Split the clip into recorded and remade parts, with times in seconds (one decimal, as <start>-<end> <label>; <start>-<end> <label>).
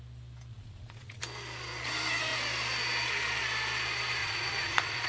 0.0-0.5 recorded; 0.5-1.2 remade; 1.2-4.2 recorded; 4.2-5.1 remade